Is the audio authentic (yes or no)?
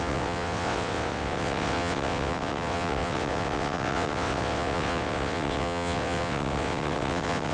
no